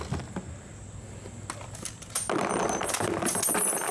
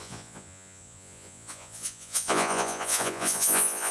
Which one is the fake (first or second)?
second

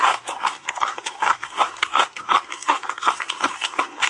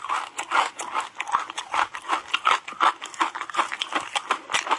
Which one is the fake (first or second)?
first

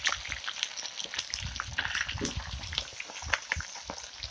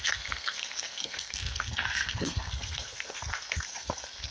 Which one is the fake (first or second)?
second